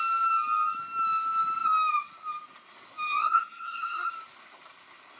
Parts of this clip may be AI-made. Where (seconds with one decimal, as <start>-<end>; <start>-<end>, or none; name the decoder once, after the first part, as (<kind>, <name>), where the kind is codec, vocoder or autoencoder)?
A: 3.2-4.1 (codec, SNAC)